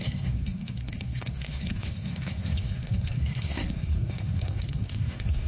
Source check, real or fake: fake